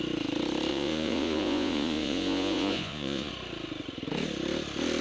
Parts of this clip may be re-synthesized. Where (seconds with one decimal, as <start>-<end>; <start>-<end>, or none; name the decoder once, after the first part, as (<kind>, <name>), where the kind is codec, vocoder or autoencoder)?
0.7-3.3 (vocoder, Vocos)